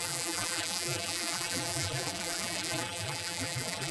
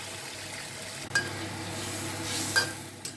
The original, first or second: second